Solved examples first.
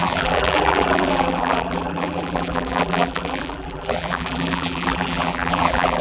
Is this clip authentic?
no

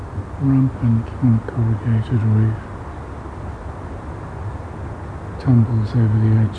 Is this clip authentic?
yes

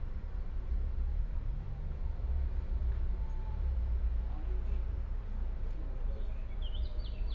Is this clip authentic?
no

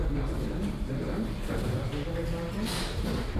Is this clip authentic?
no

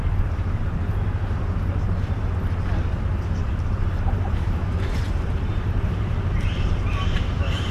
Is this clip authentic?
no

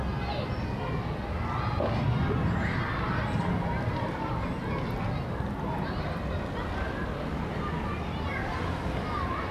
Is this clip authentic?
yes